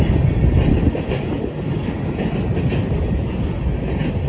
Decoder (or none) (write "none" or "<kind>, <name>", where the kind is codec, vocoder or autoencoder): none